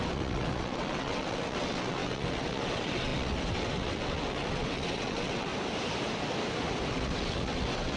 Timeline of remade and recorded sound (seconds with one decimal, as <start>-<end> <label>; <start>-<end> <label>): 0.0-5.5 remade; 5.5-6.9 recorded; 6.9-8.0 remade